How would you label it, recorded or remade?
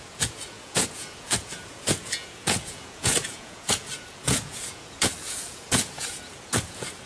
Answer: remade